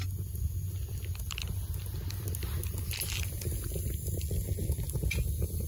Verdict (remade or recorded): recorded